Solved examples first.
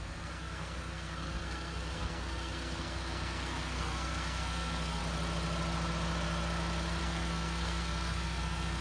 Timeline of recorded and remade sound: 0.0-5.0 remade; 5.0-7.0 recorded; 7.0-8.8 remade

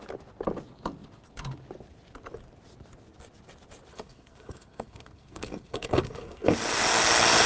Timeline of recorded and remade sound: 0.0-3.9 recorded; 3.9-6.5 remade; 6.5-7.5 recorded

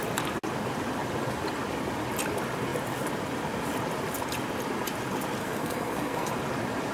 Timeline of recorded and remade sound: 0.0-5.4 recorded; 5.4-6.3 remade; 6.3-6.9 recorded